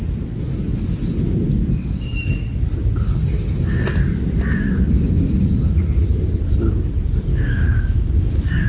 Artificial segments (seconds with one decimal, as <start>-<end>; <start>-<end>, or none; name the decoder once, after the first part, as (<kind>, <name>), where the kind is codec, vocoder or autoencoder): 7.3-8.7 (codec, DAC)